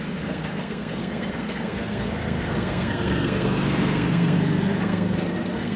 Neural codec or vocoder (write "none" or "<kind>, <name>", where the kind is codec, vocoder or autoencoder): codec, SNAC